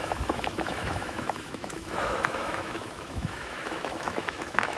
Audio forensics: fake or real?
fake